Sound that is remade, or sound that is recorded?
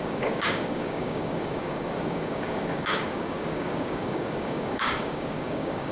remade